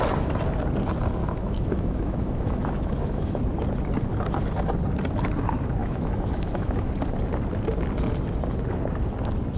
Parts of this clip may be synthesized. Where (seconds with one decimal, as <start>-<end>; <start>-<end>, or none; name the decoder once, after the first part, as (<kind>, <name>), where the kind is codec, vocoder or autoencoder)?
1.2-3.4 (autoencoder, DAC-VAE); 5.8-6.9